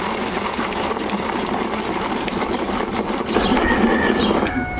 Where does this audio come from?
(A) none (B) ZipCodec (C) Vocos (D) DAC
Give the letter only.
A